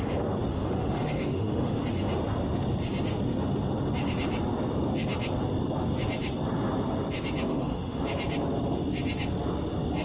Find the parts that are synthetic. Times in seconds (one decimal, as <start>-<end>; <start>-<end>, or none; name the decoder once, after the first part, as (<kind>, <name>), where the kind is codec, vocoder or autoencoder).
0.5-1.8 (autoencoder, DAC-VAE); 7.5-8.0